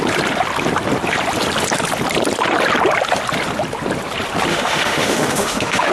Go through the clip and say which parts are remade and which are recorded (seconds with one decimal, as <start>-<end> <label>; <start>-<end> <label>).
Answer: 0.0-4.5 recorded; 4.5-5.9 remade

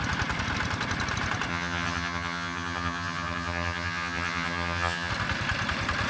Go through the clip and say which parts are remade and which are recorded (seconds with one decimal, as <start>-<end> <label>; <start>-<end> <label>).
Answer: 0.0-1.5 recorded; 1.5-5.1 remade; 5.1-6.1 recorded

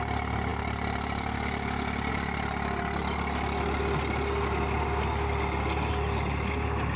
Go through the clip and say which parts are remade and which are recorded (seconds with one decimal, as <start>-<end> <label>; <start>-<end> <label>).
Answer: 0.0-7.0 recorded

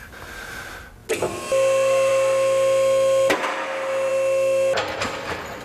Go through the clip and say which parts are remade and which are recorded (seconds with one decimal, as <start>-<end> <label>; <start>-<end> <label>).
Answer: 0.0-5.6 recorded